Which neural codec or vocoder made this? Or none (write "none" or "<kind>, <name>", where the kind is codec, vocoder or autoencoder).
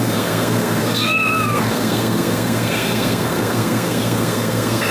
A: codec, SNAC